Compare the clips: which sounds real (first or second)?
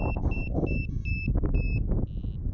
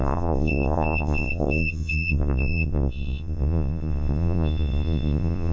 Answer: first